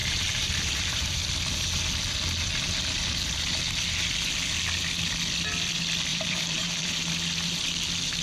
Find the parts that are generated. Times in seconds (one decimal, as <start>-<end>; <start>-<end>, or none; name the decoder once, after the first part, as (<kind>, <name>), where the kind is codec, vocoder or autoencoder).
0.0-1.2 (vocoder, BigVGAN v2); 6.1-7.1